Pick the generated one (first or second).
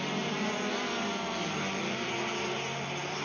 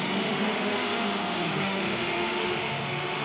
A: second